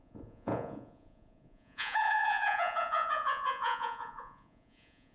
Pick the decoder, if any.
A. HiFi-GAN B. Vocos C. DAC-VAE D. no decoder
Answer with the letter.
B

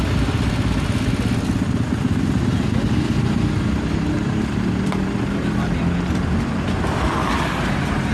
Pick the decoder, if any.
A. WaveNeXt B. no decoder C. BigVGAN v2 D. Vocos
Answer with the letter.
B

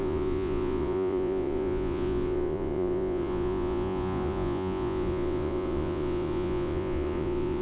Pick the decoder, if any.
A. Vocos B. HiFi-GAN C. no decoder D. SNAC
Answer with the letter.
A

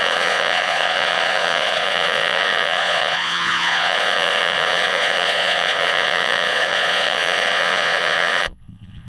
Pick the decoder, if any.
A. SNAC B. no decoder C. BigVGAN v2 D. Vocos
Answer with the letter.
D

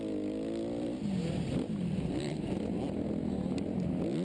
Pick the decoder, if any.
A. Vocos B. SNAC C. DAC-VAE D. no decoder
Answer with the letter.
D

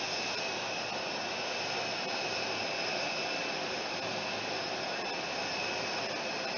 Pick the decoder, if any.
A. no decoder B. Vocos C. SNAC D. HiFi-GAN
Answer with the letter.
A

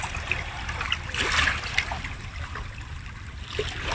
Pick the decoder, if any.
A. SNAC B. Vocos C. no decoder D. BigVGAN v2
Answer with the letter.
C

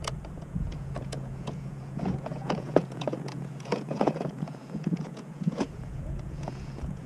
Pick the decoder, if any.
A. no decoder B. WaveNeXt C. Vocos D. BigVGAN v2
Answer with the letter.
C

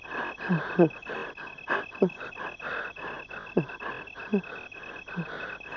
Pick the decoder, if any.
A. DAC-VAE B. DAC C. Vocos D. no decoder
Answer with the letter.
D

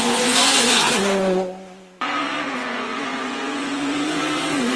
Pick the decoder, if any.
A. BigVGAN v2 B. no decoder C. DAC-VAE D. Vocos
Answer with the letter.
D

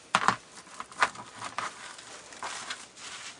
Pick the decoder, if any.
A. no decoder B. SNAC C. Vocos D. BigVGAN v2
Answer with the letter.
A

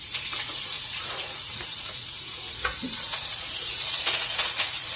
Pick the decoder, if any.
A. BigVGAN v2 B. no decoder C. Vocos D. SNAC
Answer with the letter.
C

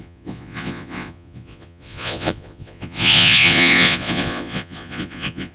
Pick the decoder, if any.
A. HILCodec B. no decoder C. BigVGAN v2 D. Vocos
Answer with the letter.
D